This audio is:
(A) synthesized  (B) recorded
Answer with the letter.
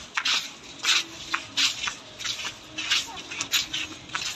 B